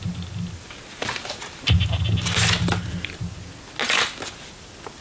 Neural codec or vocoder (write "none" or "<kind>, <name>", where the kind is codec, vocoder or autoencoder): none